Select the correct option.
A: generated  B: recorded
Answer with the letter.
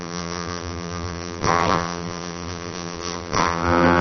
A